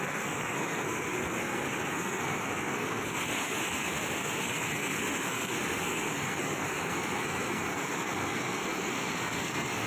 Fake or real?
fake